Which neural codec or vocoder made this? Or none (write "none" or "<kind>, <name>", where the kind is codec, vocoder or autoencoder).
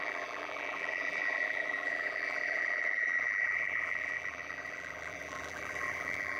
vocoder, BigVGAN v2